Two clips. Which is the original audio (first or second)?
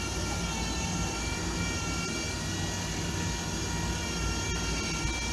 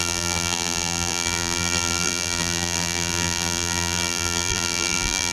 first